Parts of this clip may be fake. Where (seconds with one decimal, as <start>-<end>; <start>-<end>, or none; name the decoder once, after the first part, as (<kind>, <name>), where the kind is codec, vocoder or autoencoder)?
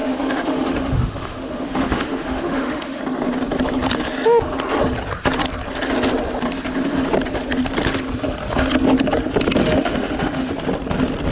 0.0-3.0 (autoencoder, DAC-VAE); 9.6-10.5